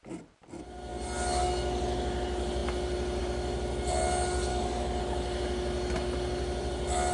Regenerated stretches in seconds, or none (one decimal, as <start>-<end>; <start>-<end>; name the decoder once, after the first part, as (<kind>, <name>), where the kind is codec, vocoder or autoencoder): 4.5-5.0 (codec, DAC)